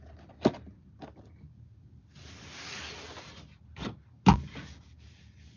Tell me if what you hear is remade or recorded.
recorded